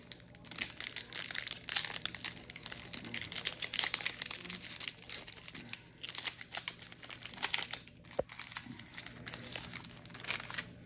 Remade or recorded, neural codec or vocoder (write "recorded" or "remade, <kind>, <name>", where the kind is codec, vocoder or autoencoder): recorded